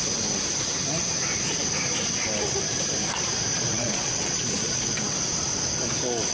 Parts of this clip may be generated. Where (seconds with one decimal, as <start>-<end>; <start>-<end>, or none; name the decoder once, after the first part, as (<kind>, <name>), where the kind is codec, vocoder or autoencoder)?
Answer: 3.5-4.9 (vocoder, Vocos)